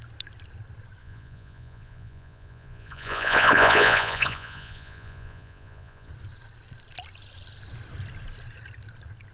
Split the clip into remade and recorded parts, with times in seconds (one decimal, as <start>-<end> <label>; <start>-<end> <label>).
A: 0.0-1.0 recorded; 1.0-6.1 remade; 6.1-9.3 recorded